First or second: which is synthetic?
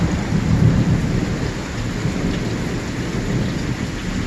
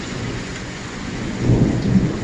second